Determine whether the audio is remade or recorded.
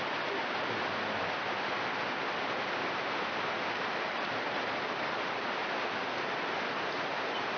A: recorded